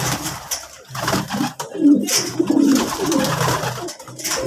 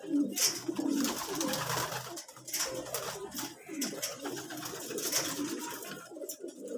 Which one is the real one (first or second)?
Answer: second